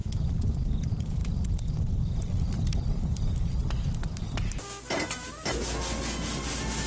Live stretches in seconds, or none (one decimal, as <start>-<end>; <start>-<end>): 0.0-6.9